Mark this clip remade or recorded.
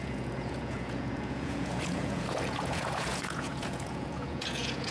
remade